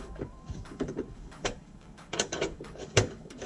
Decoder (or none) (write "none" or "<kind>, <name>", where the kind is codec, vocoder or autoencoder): codec, DAC